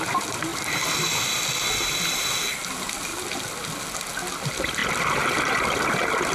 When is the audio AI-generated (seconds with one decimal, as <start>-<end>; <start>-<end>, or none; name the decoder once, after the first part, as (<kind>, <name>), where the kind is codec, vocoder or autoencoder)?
4.8-5.8 (vocoder, BigVGAN v2)